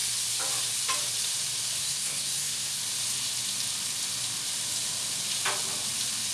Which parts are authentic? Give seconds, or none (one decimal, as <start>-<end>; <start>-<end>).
0.0-1.8; 2.8-6.3